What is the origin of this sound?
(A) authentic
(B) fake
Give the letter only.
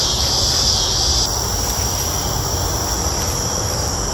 A